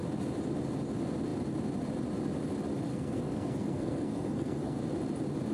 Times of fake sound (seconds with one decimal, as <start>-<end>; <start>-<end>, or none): 2.9-4.8